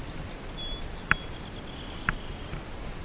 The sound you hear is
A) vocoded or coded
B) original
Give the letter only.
B